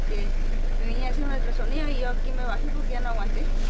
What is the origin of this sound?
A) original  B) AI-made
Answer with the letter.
A